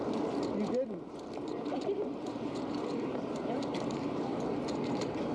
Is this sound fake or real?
fake